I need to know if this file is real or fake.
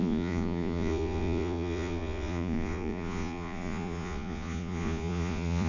fake